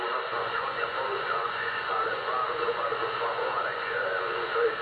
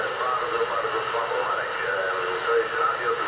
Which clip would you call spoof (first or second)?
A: first